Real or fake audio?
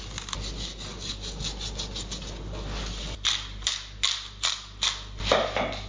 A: real